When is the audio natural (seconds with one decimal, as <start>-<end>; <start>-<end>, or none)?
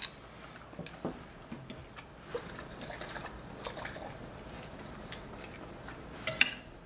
0.0-6.9